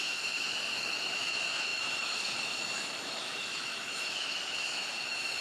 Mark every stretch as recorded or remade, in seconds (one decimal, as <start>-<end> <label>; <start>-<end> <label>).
0.0-5.4 remade